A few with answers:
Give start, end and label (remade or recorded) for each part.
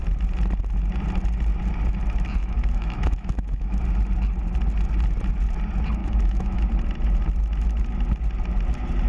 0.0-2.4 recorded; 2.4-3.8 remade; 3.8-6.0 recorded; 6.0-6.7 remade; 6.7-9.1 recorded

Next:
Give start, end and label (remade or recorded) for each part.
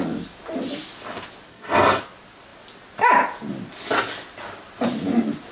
0.0-1.5 recorded; 1.5-2.0 remade; 2.0-5.5 recorded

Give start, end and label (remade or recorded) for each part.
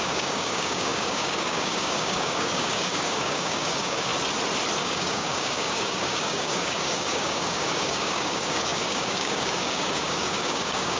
0.0-4.1 remade; 4.1-4.8 recorded; 4.8-11.0 remade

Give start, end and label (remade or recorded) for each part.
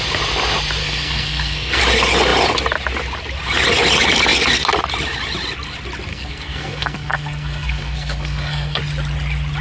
0.0-0.8 recorded; 0.8-1.8 remade; 1.8-6.1 recorded; 6.1-8.8 remade; 8.8-9.6 recorded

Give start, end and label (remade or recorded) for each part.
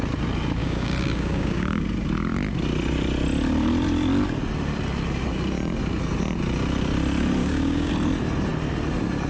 0.0-0.6 recorded; 0.6-1.8 remade; 1.8-7.4 recorded; 7.4-7.9 remade; 7.9-9.3 recorded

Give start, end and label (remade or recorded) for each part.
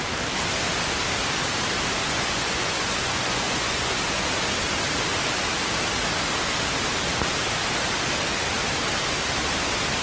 0.0-2.0 recorded; 2.0-4.3 remade; 4.3-10.0 recorded